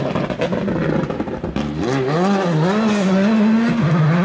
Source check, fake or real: real